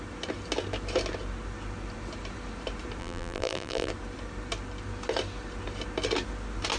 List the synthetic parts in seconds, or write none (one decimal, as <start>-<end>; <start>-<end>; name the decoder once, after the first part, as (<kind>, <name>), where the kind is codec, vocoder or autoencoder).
3.0-3.9 (vocoder, BigVGAN v2)